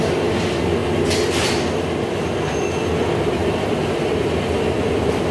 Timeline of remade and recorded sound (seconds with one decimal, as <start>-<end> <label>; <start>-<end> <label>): 0.0-5.3 recorded